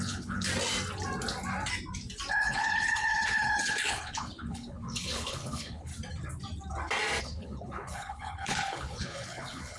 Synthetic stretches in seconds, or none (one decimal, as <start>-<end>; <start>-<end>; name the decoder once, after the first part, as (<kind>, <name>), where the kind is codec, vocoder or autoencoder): 0.0-0.5 (codec, HILCodec); 2.3-5.9; 7.2-9.8